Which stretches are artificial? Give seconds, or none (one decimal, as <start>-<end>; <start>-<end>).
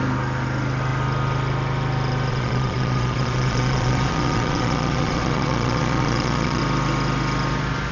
2.3-6.6